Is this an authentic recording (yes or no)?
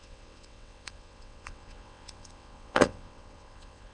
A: no